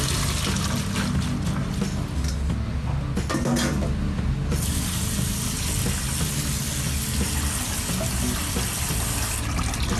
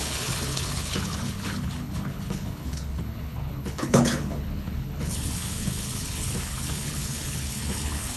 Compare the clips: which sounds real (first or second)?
first